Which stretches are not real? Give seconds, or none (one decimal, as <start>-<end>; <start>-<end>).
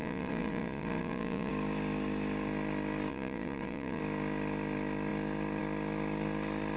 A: 0.0-1.5; 3.1-4.0